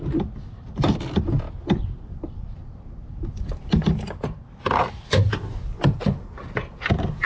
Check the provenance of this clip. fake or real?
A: real